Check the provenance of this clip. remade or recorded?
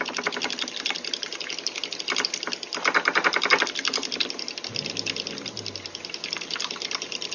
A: recorded